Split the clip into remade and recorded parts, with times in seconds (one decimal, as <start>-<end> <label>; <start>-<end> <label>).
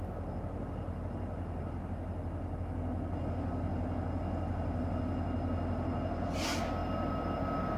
0.0-7.8 recorded